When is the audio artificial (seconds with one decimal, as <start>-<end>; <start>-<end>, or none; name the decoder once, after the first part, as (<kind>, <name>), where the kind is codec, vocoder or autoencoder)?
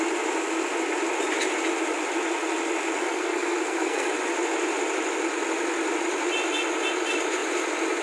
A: 3.0-4.1 (codec, SNAC)